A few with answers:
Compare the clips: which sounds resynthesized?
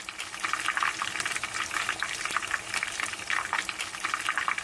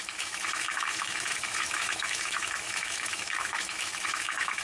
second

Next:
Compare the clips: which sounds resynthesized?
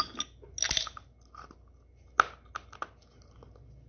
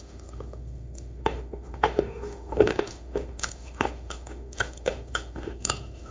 second